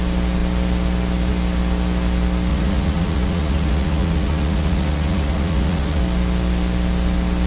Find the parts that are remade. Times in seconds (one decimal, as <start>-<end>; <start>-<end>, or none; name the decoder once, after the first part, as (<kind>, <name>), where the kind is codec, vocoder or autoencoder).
2.5-6.0 (vocoder, Vocos)